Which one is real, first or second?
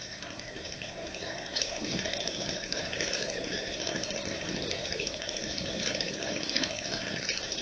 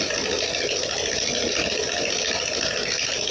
second